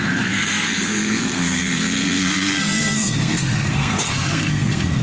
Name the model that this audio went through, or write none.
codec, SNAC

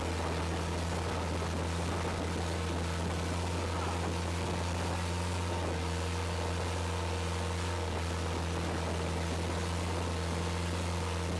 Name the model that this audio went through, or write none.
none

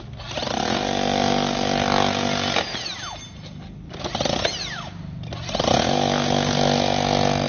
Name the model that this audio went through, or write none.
none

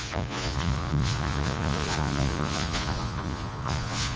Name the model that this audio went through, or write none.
vocoder, Vocos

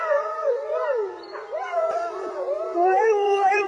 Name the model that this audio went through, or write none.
vocoder, Vocos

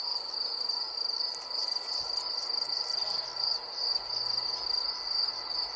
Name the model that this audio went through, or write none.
none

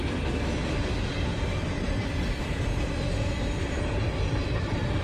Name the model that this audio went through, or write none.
vocoder, BigVGAN v2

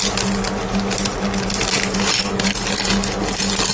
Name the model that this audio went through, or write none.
none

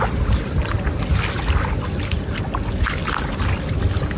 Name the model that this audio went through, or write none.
none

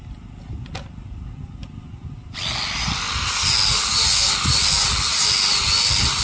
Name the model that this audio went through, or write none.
none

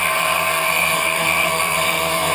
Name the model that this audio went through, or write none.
codec, SNAC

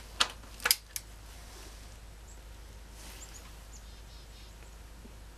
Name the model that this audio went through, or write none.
none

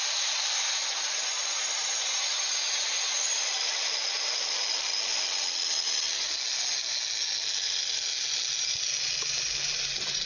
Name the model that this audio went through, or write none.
none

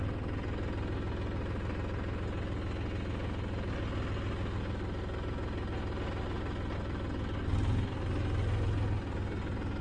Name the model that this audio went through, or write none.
none